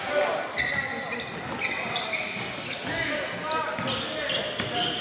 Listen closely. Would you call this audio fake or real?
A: real